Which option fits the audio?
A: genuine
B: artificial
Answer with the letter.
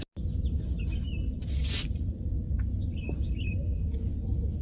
A